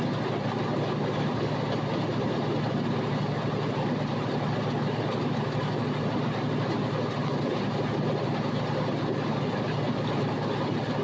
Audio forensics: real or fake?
real